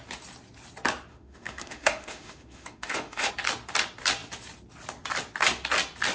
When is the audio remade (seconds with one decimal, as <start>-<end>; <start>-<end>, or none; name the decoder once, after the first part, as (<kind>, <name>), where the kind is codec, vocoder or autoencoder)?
1.1-3.3 (autoencoder, DAC-VAE)